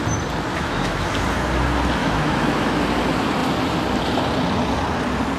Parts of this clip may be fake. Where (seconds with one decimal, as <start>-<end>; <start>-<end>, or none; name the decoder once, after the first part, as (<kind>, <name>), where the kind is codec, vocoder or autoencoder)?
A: 0.5-1.1 (autoencoder, DAC-VAE); 2.0-2.8